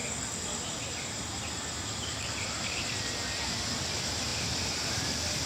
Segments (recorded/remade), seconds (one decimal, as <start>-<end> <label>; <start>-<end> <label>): 0.0-3.3 remade; 3.3-4.3 recorded; 4.3-5.5 remade